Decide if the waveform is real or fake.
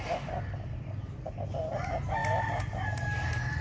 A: real